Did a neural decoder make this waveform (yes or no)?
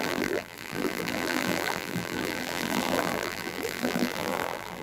yes